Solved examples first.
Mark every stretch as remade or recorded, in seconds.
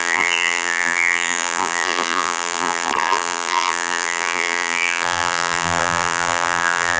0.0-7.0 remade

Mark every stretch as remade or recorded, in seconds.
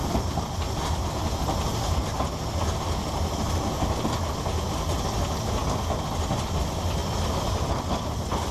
0.0-0.6 remade; 0.6-8.5 recorded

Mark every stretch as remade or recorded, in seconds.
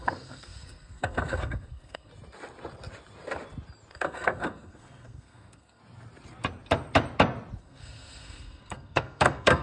0.0-2.1 remade; 2.1-3.9 recorded; 3.9-5.8 remade; 5.8-7.6 recorded; 7.6-9.6 remade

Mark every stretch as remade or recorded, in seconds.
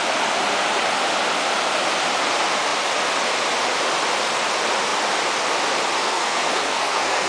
0.0-6.0 recorded; 6.0-7.3 remade